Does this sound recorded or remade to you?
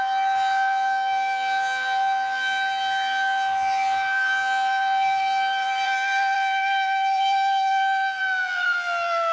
remade